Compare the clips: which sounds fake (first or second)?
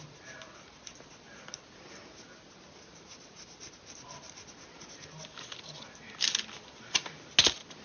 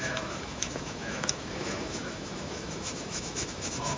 second